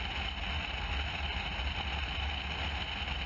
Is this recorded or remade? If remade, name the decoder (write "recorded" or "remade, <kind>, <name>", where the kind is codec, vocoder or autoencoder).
recorded